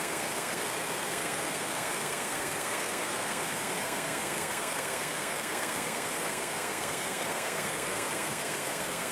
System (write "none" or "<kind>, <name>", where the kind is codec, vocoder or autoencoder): codec, SNAC